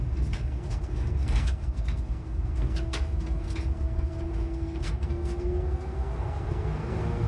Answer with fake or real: fake